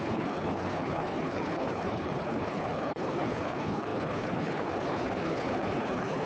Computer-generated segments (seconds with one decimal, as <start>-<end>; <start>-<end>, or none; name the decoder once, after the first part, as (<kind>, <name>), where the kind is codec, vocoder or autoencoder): 0.0-6.3 (codec, HILCodec)